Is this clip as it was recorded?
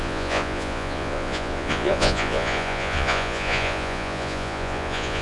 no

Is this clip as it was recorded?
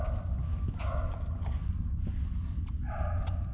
yes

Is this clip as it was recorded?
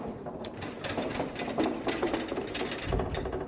no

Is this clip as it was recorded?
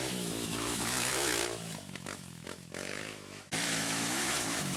no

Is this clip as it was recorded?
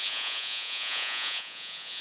no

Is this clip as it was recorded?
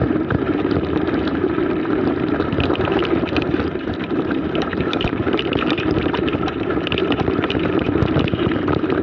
no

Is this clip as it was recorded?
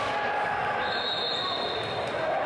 yes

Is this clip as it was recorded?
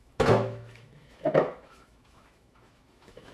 no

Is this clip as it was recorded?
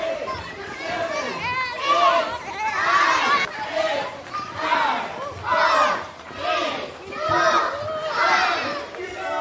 yes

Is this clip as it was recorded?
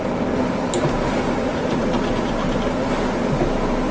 yes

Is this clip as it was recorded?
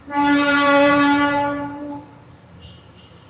no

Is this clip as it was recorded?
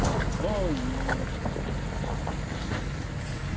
yes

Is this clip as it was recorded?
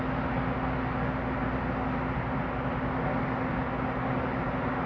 yes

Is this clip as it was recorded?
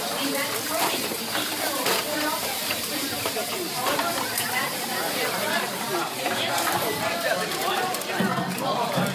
no